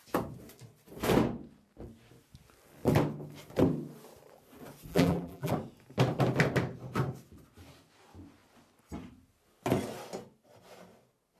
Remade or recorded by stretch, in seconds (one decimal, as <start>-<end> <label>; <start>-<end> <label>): 0.0-4.9 recorded; 4.9-5.5 remade; 5.5-11.4 recorded